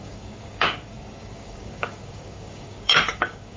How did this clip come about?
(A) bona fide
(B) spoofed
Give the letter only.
B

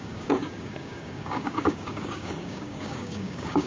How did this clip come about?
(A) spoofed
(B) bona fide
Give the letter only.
A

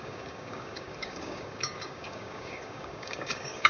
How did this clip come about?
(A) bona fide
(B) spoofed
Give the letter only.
B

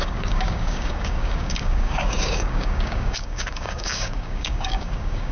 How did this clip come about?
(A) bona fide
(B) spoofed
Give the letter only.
B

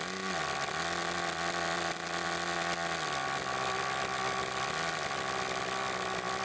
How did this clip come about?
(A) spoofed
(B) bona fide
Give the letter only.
B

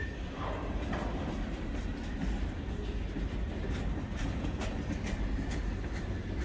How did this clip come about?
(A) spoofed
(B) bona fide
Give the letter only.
B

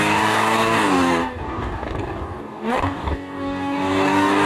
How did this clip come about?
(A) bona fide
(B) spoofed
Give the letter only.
B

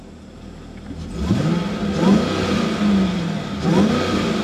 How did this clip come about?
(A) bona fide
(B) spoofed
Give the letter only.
A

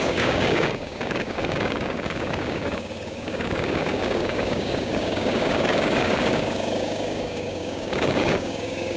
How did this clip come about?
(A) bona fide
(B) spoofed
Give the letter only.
B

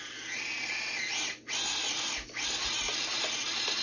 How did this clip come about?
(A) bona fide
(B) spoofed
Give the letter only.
A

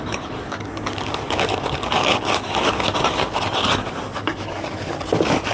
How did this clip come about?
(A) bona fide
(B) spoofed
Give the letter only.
B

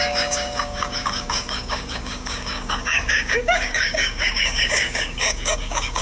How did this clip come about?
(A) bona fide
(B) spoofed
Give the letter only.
B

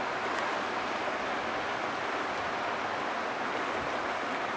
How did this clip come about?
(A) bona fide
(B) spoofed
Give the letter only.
A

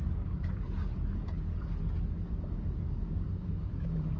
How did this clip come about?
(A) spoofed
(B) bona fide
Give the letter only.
A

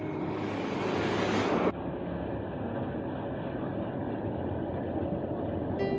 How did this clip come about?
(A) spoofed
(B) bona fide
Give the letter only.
B